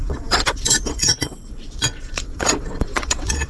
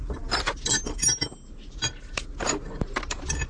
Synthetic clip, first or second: first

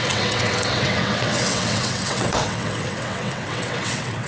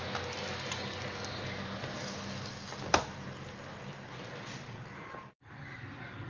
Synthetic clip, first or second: first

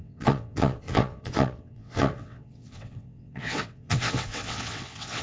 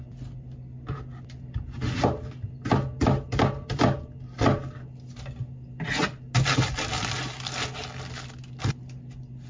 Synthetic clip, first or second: first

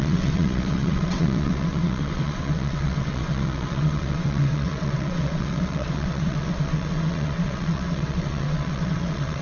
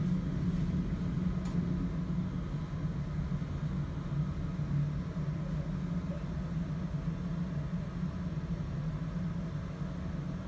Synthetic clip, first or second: first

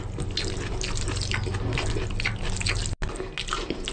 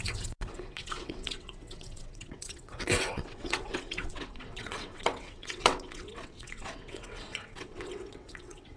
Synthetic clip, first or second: second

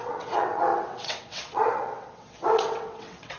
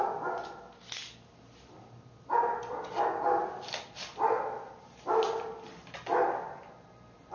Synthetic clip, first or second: first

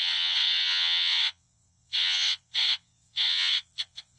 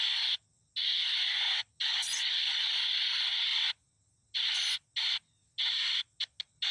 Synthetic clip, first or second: first